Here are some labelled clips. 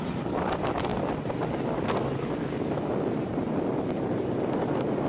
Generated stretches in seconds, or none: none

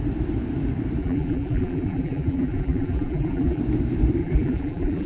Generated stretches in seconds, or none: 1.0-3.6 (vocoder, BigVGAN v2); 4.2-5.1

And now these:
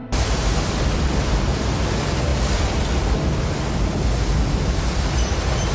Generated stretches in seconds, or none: 0.0-1.9 (vocoder, BigVGAN v2)

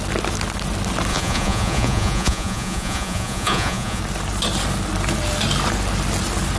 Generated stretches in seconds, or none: 1.1-4.0 (vocoder, Vocos)

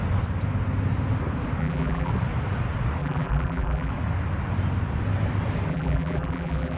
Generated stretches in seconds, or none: 1.6-2.1 (vocoder, BigVGAN v2); 3.0-3.9; 5.7-6.8

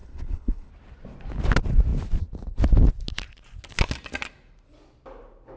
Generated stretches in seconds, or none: 0.0-0.7 (codec, HILCodec)